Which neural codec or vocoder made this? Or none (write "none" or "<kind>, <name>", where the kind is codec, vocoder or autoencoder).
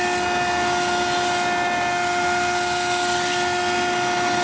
none